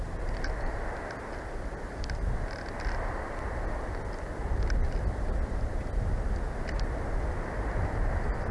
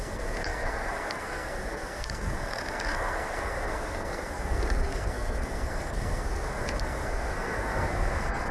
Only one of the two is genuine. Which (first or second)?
first